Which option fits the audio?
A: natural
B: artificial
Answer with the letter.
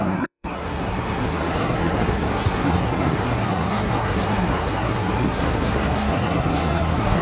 B